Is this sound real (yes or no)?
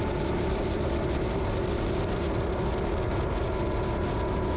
yes